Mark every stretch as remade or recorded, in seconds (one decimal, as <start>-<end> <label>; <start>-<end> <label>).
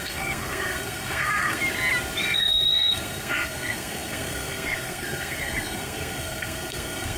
0.0-1.6 remade; 1.6-2.2 recorded; 2.2-7.2 remade